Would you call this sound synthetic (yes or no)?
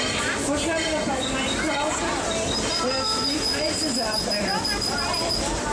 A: yes